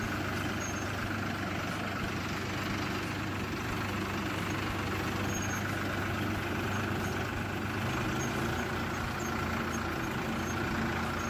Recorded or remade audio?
recorded